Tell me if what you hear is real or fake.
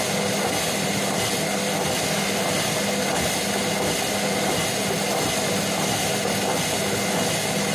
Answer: real